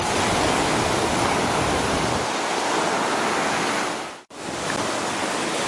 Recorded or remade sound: recorded